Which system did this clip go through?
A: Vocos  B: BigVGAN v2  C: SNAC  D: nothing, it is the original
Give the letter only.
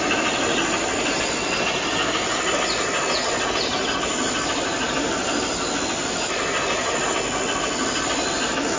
D